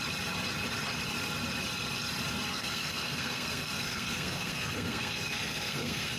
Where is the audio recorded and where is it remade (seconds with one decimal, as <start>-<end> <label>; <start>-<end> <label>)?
0.0-2.5 recorded; 2.5-6.2 remade